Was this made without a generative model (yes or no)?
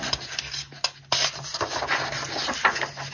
yes